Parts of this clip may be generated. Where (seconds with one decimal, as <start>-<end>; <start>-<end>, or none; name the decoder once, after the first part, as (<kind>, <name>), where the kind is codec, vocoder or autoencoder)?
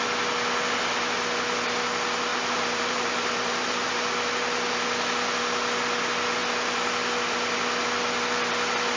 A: 2.3-3.9 (vocoder, BigVGAN v2)